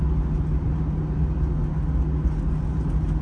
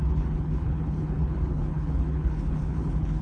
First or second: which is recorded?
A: first